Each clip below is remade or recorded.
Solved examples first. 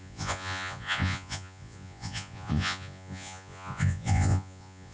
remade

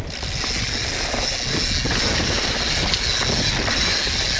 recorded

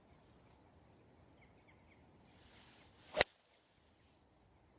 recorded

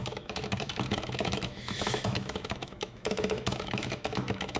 remade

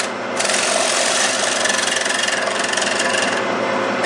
recorded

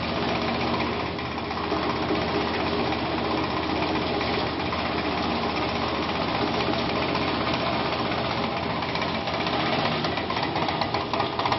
recorded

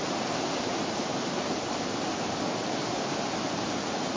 recorded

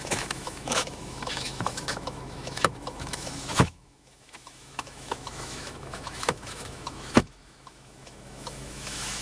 remade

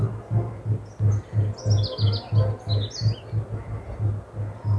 recorded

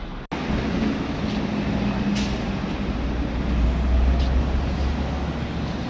recorded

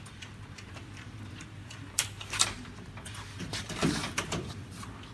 remade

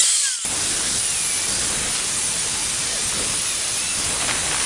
recorded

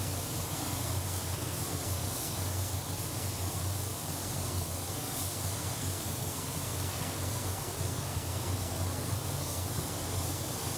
remade